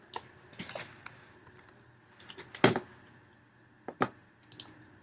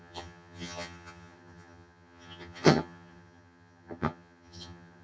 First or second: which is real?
first